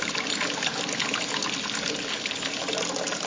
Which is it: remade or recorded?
recorded